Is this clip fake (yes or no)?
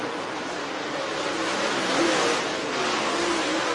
no